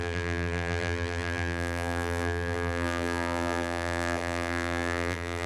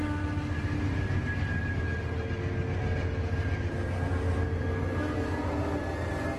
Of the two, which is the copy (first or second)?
first